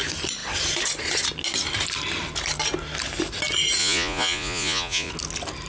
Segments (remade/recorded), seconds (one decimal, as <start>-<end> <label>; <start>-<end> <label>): 0.0-3.8 recorded; 3.8-5.1 remade; 5.1-5.7 recorded